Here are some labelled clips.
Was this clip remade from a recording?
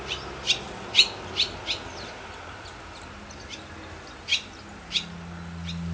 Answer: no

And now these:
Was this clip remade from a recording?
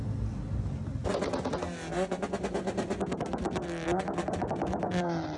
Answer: no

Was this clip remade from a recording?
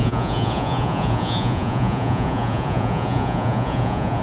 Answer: yes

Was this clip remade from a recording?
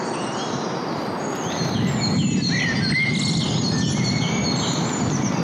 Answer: no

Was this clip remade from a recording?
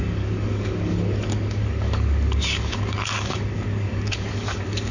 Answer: yes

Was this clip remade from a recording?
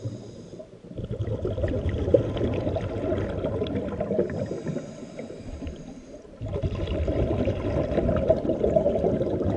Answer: yes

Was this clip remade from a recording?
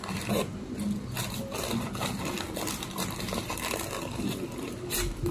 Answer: no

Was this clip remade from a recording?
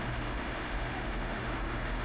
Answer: yes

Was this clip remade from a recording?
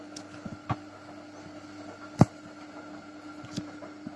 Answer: no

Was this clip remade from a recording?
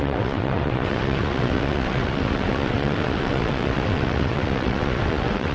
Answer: yes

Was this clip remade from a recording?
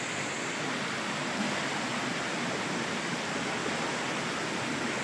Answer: no